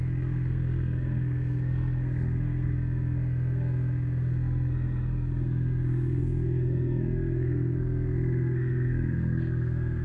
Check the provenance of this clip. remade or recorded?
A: remade